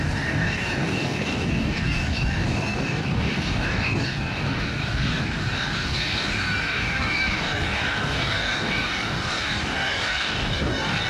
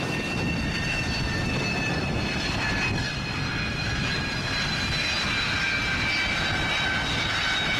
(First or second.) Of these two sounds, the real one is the second